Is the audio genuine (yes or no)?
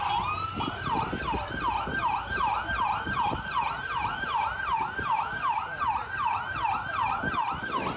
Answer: yes